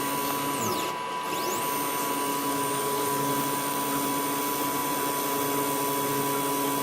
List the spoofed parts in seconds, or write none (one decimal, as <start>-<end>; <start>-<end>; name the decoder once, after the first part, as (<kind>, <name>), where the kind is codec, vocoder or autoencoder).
2.3-3.3 (codec, DAC)